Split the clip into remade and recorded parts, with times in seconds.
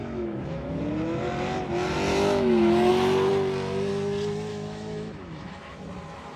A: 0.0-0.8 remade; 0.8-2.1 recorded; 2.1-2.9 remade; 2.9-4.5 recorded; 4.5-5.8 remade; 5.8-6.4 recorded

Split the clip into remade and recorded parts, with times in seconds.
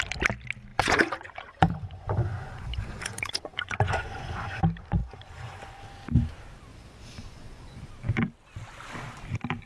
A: 0.0-0.7 recorded; 0.7-4.6 remade; 4.6-5.0 recorded; 5.0-5.8 remade; 5.8-6.7 recorded; 6.7-7.9 remade; 7.9-9.7 recorded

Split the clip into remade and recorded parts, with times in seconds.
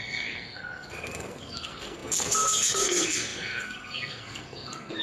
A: 0.0-5.0 remade